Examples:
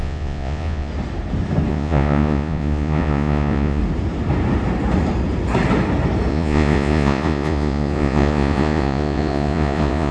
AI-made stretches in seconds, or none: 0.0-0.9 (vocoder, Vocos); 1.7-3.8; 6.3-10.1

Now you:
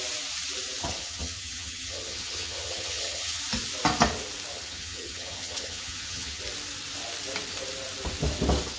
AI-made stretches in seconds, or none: 0.8-3.4 (vocoder, HiFi-GAN); 4.5-6.4

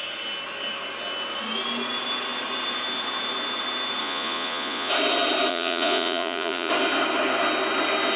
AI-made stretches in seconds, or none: 4.0-4.9 (vocoder, Vocos); 5.5-6.7

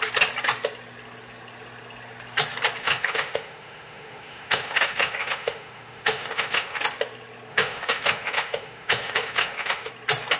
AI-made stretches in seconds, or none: 2.8-6.8 (autoencoder, DAC-VAE); 7.5-9.9

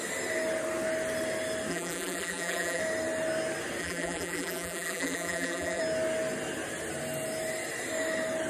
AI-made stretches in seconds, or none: 1.7-2.8 (vocoder, BigVGAN v2); 3.8-5.8

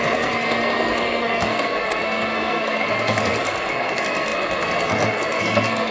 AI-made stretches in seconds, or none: 0.0-5.9 (codec, SNAC)